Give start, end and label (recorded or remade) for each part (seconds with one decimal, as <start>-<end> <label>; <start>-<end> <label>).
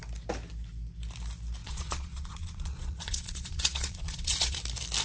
0.0-1.6 recorded; 1.6-4.6 remade; 4.6-5.0 recorded